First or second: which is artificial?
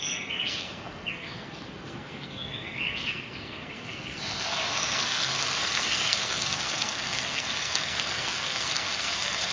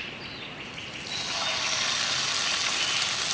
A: first